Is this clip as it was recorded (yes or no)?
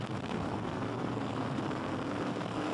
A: no